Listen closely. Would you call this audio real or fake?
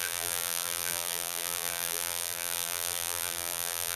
fake